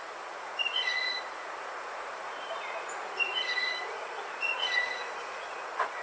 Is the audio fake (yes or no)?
yes